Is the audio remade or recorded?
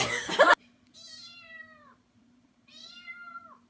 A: remade